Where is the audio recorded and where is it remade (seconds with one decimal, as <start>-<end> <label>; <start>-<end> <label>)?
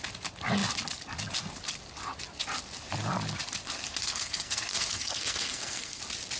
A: 0.0-4.0 recorded; 4.0-6.0 remade; 6.0-6.4 recorded